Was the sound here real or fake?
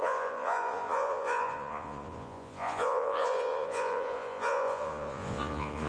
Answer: fake